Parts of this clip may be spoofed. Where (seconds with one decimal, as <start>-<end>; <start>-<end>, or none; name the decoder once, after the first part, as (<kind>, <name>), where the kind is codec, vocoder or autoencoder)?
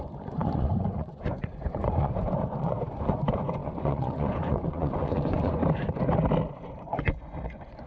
0.0-5.6 (vocoder, Vocos); 6.5-7.9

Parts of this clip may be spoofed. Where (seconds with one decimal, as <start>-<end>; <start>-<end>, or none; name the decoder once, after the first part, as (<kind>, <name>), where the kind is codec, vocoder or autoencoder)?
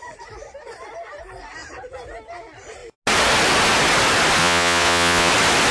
4.4-5.3 (vocoder, Vocos)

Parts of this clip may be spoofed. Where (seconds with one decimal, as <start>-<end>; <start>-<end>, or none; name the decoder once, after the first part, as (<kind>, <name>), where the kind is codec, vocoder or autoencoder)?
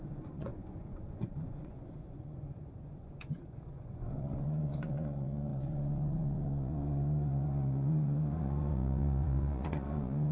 0.0-10.3 (vocoder, Vocos)